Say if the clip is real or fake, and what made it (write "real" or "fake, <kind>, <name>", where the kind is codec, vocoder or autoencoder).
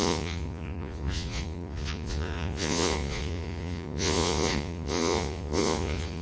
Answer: fake, vocoder, Vocos